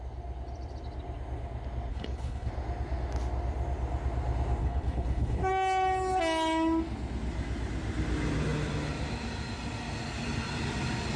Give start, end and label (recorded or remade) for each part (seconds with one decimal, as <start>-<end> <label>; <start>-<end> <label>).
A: 0.0-1.9 recorded; 1.9-2.5 remade; 2.5-4.6 recorded; 4.6-5.4 remade; 5.4-11.2 recorded